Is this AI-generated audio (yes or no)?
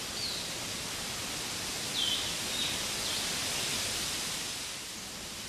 no